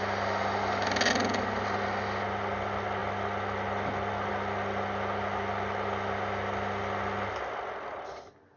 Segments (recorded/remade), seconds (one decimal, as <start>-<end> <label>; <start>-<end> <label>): 0.0-8.6 recorded